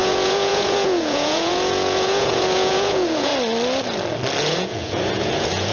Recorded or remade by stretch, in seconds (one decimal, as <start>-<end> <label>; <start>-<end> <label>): 0.0-3.3 remade; 3.3-4.4 recorded; 4.4-5.7 remade